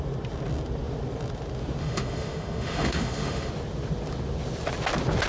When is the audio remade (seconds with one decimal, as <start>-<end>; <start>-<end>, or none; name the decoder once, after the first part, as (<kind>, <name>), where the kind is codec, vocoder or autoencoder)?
1.8-3.5 (autoencoder, DAC-VAE)

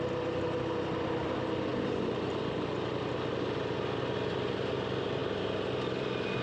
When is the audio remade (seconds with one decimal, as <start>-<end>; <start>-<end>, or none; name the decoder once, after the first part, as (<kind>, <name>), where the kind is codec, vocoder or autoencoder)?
none

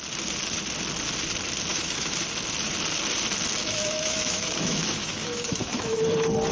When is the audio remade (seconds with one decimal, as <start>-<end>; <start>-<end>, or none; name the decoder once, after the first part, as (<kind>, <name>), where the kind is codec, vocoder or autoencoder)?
1.7-2.2 (autoencoder, DAC-VAE); 3.6-6.1

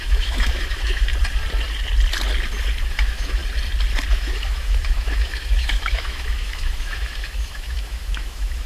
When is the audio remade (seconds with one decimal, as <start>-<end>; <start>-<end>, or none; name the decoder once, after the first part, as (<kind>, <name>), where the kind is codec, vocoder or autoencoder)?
0.0-1.1 (autoencoder, DAC-VAE); 2.8-3.4; 4.1-8.7

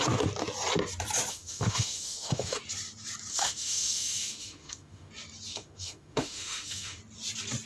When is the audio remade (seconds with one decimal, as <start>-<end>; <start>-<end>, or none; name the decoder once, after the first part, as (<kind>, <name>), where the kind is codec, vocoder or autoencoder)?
1.3-2.6 (autoencoder, DAC-VAE); 3.3-5.1; 5.5-7.0

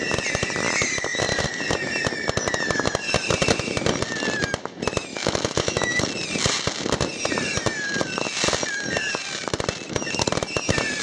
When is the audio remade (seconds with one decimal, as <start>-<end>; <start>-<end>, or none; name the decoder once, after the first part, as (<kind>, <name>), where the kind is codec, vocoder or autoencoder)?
5.1-6.0 (autoencoder, DAC-VAE)

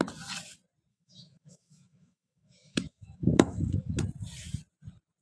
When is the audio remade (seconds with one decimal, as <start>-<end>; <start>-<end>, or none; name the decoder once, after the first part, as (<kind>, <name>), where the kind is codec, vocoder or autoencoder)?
0.9-4.0 (autoencoder, DAC-VAE)